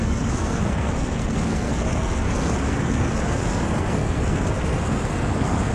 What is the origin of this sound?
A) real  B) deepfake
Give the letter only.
B